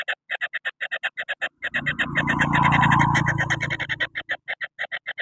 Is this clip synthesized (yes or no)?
no